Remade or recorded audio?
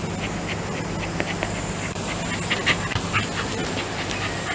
recorded